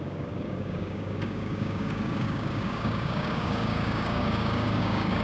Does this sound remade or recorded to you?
remade